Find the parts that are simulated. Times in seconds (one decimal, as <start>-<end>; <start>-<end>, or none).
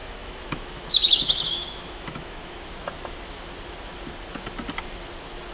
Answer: 0.0-2.6